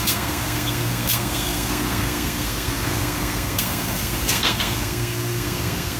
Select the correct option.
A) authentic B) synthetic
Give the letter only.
B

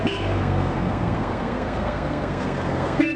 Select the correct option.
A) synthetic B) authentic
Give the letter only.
A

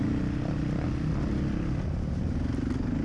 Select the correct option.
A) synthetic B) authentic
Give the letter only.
B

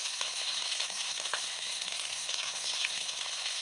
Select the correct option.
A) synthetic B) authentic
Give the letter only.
A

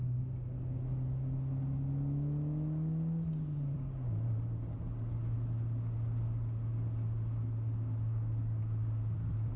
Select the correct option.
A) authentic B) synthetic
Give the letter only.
A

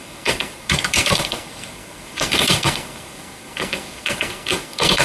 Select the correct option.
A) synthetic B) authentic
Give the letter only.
A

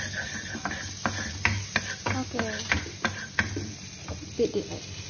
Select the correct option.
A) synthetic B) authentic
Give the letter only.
B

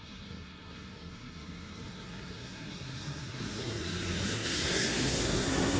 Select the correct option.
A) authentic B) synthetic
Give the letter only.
B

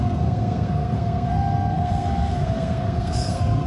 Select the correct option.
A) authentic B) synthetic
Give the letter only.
B